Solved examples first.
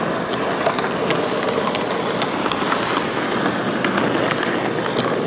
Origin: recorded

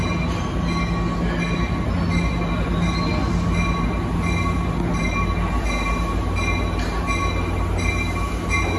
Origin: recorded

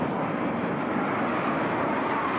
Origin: recorded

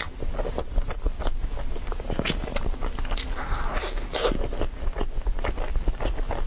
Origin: recorded